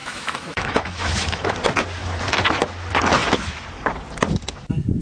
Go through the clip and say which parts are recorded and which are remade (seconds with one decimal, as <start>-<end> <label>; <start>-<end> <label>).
0.0-1.5 remade; 1.5-5.0 recorded